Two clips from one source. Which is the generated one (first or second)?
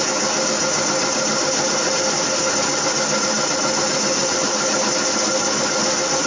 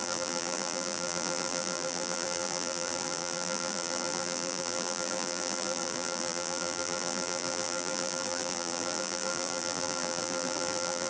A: second